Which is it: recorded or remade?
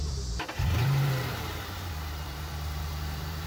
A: remade